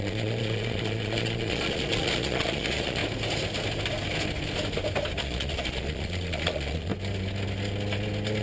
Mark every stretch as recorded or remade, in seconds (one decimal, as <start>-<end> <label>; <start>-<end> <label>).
0.0-3.0 remade; 3.0-5.2 recorded; 5.2-6.9 remade; 6.9-8.4 recorded